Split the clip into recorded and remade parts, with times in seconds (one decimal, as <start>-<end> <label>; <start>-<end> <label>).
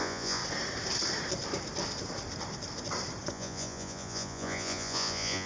0.0-0.4 remade; 0.4-3.3 recorded; 3.3-5.5 remade